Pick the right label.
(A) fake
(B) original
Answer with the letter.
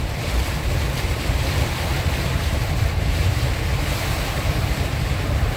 A